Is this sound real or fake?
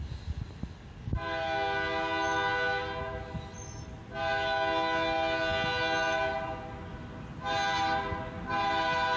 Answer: real